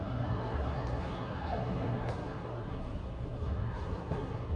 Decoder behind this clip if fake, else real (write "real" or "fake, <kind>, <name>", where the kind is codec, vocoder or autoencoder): fake, codec, SNAC